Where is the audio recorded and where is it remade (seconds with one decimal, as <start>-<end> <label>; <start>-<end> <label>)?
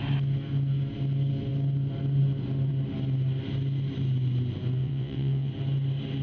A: 0.0-4.8 recorded; 4.8-5.5 remade; 5.5-6.2 recorded